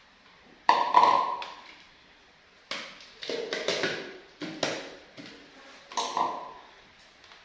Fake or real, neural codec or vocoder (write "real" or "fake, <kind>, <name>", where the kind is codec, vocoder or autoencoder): real